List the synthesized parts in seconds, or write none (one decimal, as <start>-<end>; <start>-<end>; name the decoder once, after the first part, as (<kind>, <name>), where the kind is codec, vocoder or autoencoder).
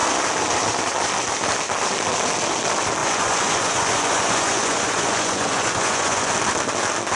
3.0-6.3 (vocoder, Vocos)